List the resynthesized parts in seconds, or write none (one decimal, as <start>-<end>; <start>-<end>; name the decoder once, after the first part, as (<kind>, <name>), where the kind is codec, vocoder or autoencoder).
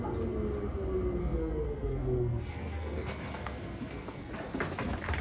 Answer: 1.2-4.3 (codec, SNAC)